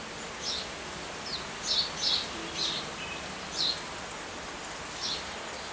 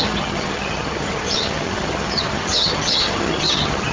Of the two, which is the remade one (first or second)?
second